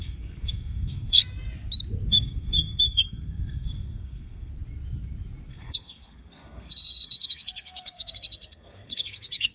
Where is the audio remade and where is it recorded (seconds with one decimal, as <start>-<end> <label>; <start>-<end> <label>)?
0.0-1.2 remade; 1.2-2.1 recorded; 2.1-4.5 remade; 4.5-5.5 recorded; 5.5-9.5 remade